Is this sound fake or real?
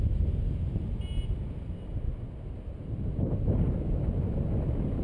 real